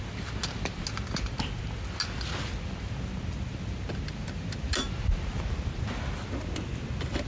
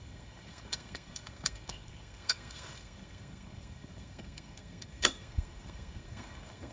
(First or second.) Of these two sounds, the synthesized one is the second